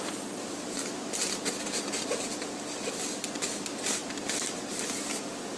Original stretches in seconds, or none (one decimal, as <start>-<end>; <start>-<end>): 0.0-5.6